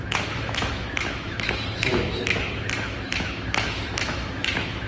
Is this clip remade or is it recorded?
remade